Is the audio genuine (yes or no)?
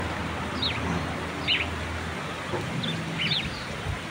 yes